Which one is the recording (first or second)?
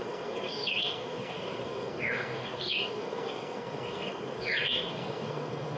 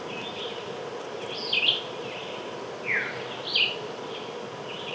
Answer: second